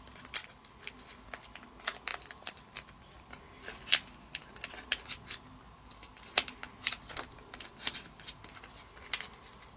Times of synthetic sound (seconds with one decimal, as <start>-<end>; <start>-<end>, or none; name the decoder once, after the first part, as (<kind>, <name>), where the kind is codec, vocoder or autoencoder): 2.1-3.3 (vocoder, BigVGAN v2)